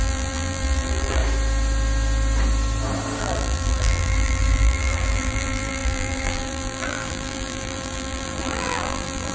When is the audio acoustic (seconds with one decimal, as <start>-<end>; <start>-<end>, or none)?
1.2-3.2